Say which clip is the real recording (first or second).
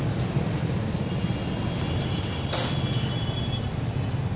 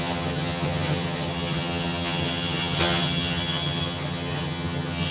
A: first